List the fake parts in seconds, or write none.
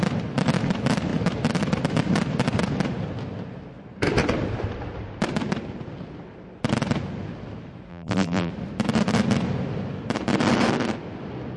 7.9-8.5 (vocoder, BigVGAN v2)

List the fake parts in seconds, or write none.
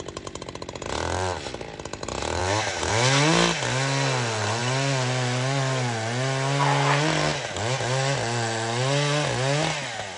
none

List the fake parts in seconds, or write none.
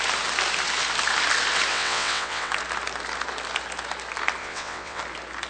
1.7-2.5 (vocoder, WaveNeXt); 4.4-5.0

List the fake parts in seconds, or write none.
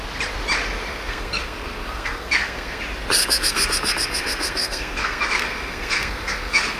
0.9-2.8 (codec, SNAC); 3.2-6.8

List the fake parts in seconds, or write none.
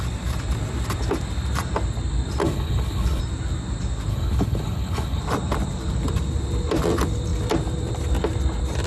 2.4-3.2 (codec, HILCodec); 4.1-5.2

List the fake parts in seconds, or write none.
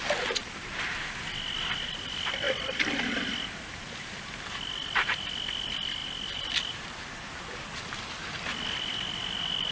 none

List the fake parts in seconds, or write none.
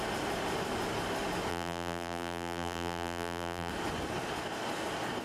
1.5-3.7 (vocoder, BigVGAN v2)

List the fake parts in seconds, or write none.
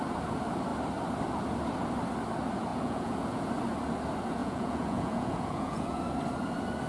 2.7-3.5 (vocoder, Vocos); 4.4-6.0